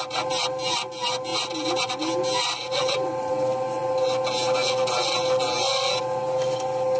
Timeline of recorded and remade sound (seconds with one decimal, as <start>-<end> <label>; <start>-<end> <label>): 0.0-7.0 recorded